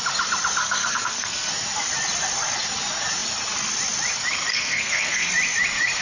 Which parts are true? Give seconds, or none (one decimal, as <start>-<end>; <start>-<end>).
0.0-0.6; 1.5-4.5; 5.3-6.0

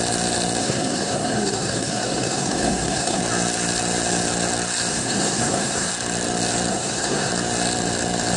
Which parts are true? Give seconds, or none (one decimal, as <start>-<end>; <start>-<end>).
0.0-0.6; 3.2-4.9; 5.9-6.7; 7.3-8.4

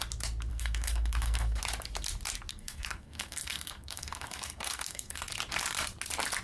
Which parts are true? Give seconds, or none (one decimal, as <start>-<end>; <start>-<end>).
0.0-0.5; 1.6-2.5; 5.3-6.4

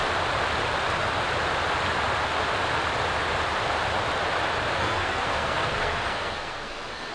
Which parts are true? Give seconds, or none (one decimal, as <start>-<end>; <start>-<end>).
0.0-4.8

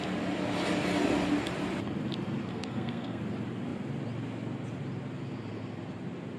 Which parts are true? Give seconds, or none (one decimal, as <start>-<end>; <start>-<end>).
0.0-2.5; 3.2-6.4